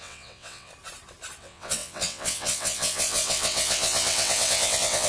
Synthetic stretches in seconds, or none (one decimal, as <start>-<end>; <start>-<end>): 0.0-0.7; 1.4-5.1